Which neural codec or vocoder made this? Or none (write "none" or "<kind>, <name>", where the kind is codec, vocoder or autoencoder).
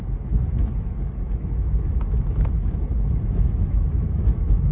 autoencoder, DAC-VAE